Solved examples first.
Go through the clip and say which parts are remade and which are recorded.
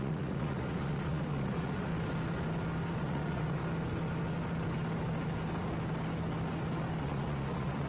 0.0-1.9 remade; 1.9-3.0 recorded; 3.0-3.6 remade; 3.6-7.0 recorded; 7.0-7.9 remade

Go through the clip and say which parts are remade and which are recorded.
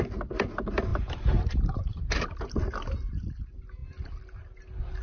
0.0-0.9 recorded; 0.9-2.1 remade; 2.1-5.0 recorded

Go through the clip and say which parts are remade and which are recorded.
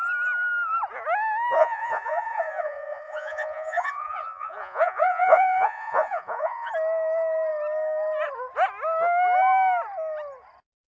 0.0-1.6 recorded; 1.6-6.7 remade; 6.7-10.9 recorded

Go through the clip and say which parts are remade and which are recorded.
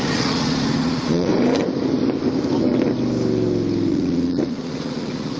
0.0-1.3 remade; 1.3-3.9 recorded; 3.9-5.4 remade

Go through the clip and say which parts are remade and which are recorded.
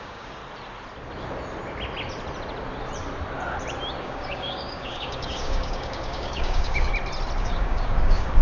0.0-0.4 remade; 0.4-4.0 recorded; 4.0-6.9 remade; 6.9-7.4 recorded; 7.4-8.4 remade